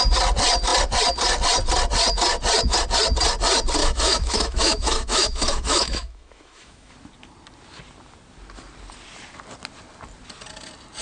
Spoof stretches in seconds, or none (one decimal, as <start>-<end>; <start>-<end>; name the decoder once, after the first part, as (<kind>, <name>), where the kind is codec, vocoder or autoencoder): 3.8-6.9 (autoencoder, DAC-VAE)